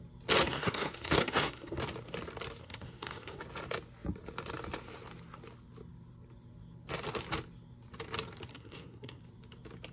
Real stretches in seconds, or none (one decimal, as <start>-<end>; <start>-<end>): 0.0-0.4; 1.8-2.6; 3.4-8.5; 9.2-9.9